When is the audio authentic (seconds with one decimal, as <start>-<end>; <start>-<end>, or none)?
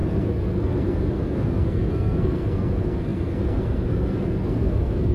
none